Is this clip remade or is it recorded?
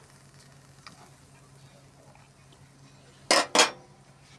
recorded